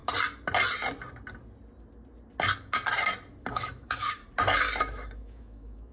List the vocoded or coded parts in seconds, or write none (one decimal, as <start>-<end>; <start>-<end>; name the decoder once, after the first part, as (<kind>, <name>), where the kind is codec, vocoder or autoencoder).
3.5-4.2 (autoencoder, DAC-VAE); 4.8-5.9